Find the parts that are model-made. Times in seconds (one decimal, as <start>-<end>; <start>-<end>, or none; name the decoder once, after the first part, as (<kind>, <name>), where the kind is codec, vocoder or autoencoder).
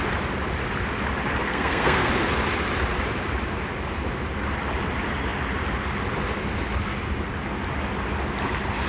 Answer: 1.4-2.1 (codec, SNAC)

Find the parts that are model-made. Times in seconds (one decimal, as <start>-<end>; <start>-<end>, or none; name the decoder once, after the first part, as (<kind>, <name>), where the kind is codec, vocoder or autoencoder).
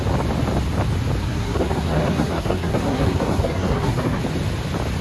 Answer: 1.2-4.2 (codec, SNAC)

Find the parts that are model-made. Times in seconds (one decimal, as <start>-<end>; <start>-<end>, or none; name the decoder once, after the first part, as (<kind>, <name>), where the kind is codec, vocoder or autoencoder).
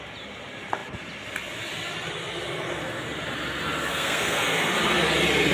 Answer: 3.9-4.7 (codec, SNAC)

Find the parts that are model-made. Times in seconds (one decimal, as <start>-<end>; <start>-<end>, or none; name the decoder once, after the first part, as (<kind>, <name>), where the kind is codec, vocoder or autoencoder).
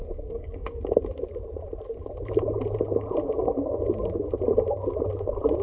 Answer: 0.0-0.8 (codec, SNAC)